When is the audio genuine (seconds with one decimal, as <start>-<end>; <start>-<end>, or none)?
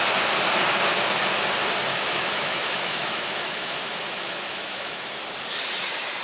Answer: 0.0-1.9; 5.2-6.2